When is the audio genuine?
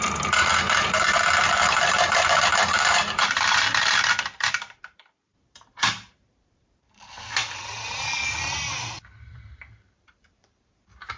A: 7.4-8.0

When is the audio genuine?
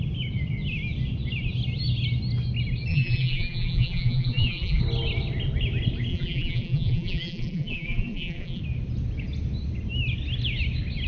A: 0.0-2.9; 4.8-6.1; 8.6-11.1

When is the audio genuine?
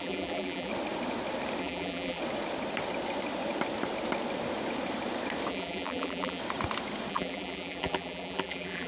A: 0.7-1.6; 2.2-5.5; 6.4-7.1